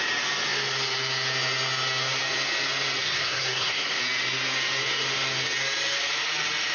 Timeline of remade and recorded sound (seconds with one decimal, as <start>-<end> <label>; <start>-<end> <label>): 0.0-3.0 recorded; 3.0-4.0 remade; 4.0-6.7 recorded